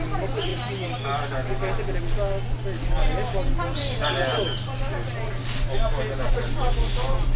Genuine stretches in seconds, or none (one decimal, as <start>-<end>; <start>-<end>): 0.0-7.4